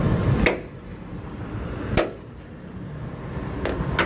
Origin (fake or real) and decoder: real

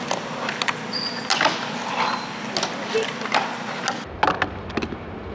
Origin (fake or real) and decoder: real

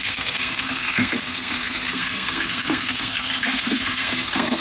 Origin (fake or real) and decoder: fake, codec, SNAC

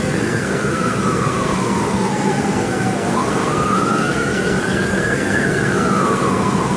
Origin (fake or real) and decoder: fake, codec, SNAC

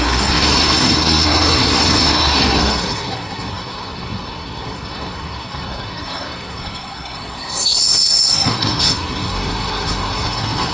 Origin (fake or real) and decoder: fake, codec, SNAC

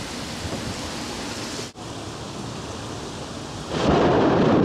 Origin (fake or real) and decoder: real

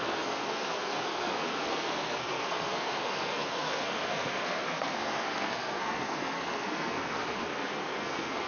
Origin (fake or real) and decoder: fake, codec, SNAC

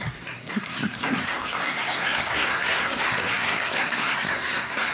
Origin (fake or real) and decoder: fake, codec, SNAC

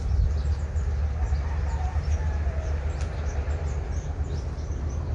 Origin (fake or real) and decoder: real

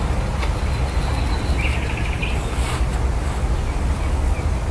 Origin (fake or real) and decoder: real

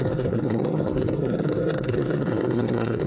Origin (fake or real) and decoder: fake, codec, SNAC